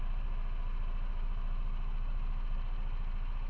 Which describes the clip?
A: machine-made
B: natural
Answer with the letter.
B